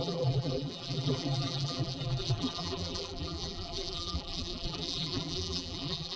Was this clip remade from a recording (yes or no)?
yes